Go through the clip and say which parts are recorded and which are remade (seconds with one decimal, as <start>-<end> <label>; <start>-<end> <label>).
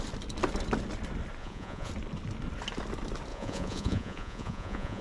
0.0-1.4 recorded; 1.4-1.9 remade; 1.9-3.3 recorded; 3.3-5.0 remade